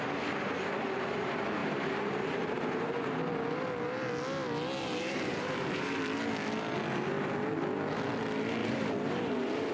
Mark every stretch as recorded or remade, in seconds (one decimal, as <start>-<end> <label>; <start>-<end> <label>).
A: 0.0-1.6 recorded; 1.6-3.2 remade; 3.2-4.8 recorded; 4.8-6.0 remade; 6.0-8.6 recorded; 8.6-9.7 remade

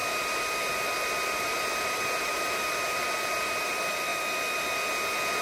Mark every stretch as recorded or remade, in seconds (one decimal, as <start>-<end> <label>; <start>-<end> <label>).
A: 0.0-1.4 recorded; 1.4-4.1 remade; 4.1-5.4 recorded

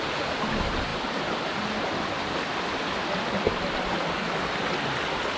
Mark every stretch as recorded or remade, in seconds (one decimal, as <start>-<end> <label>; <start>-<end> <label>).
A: 0.0-0.9 recorded; 0.9-4.1 remade; 4.1-5.4 recorded

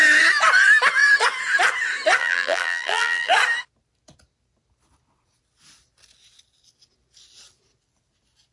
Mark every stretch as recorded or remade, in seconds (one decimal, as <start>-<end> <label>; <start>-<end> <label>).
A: 0.0-2.2 recorded; 2.2-3.3 remade; 3.3-8.5 recorded

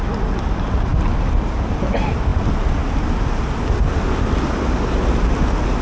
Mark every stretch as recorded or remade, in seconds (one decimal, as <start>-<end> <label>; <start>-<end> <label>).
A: 0.0-0.9 recorded; 0.9-1.8 remade; 1.8-5.8 recorded